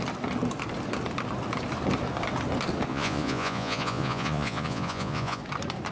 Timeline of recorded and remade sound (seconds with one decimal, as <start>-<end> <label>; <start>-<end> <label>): 0.0-2.9 recorded; 2.9-5.4 remade; 5.4-5.9 recorded